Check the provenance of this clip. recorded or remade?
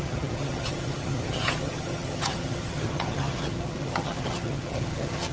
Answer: remade